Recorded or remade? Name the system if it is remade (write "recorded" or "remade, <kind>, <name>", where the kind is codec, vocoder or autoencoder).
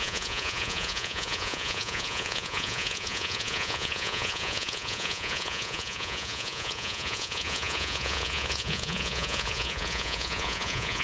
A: remade, vocoder, Vocos